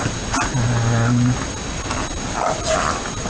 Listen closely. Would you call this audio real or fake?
fake